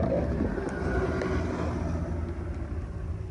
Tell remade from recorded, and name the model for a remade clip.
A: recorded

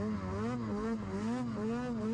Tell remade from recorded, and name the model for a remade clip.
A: recorded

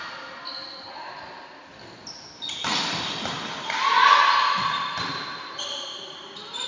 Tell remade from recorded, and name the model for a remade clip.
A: recorded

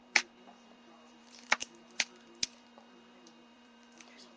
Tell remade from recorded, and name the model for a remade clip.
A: remade, vocoder, BigVGAN v2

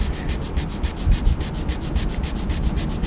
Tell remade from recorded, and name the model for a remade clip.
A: recorded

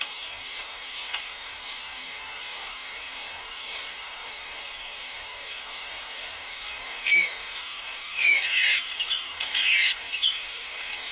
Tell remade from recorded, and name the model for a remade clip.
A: remade, codec, DAC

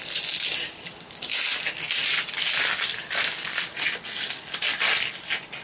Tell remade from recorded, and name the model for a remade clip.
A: recorded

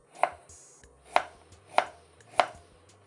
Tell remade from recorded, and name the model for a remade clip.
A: recorded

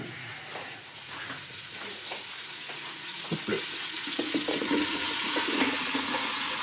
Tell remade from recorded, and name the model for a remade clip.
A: remade, vocoder, Vocos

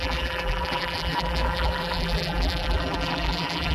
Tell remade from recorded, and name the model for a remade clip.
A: remade, vocoder, BigVGAN v2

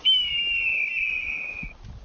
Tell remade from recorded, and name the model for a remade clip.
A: recorded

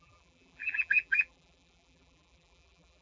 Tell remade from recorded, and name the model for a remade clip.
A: remade, vocoder, BigVGAN v2